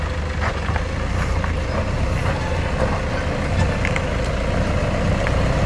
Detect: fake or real real